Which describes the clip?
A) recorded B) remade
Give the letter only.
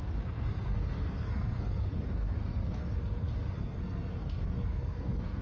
B